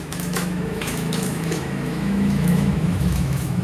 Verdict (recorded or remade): remade